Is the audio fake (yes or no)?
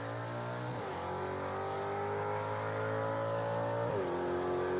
no